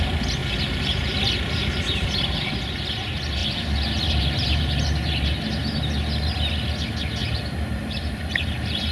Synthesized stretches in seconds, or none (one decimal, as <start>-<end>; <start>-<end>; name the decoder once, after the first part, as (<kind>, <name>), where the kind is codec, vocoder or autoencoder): 0.4-1.3 (vocoder, BigVGAN v2); 3.4-5.3; 7.2-8.9